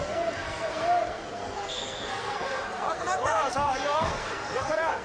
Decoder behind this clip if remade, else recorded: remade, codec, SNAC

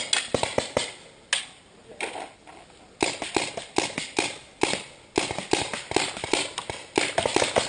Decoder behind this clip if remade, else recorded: recorded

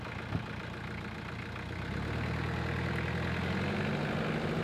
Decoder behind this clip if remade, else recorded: recorded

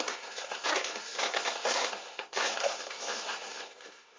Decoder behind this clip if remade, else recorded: remade, codec, SNAC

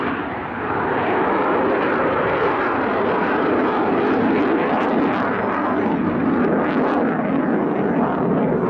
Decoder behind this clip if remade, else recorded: recorded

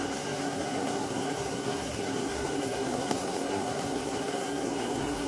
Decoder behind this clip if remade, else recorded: remade, codec, SNAC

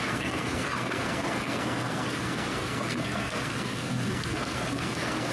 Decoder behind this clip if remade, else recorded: remade, codec, SNAC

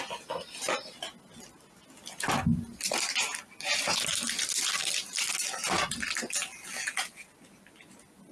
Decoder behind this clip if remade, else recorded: recorded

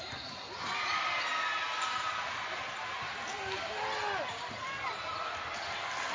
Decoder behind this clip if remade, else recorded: recorded